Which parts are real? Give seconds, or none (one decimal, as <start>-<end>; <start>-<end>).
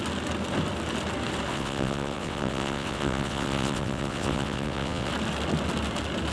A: 0.0-1.5; 5.1-6.3